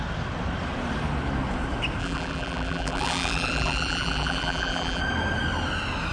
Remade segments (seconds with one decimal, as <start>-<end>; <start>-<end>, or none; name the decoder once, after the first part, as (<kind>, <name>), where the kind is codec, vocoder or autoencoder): 2.0-5.0 (vocoder, BigVGAN v2)